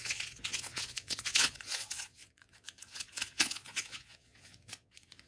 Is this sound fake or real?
fake